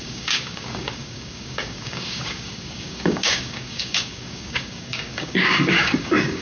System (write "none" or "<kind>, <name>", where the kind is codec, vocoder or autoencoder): codec, DAC